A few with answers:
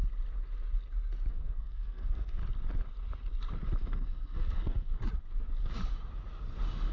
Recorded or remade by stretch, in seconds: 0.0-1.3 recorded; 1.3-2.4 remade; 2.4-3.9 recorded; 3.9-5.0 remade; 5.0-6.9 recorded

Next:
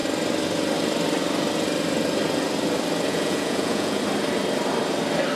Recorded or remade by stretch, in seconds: 0.0-3.1 recorded; 3.1-4.0 remade; 4.0-5.4 recorded